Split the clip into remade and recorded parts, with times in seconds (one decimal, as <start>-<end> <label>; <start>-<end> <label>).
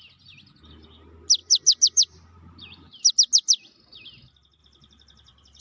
0.0-1.4 recorded; 1.4-3.1 remade; 3.1-4.6 recorded; 4.6-5.6 remade